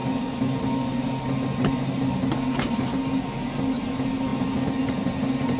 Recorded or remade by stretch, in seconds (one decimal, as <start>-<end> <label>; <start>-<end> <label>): 0.0-5.6 recorded